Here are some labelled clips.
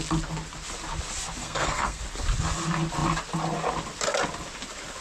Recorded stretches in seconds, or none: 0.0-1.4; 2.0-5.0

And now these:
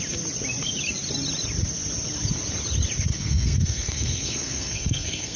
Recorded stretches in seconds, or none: 0.0-3.1

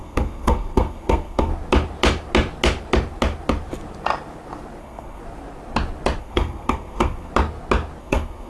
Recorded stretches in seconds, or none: 1.5-4.8; 5.2-6.2; 7.3-8.0

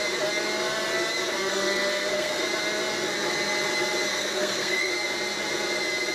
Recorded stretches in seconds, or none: 0.0-1.5; 2.4-4.1; 4.9-6.1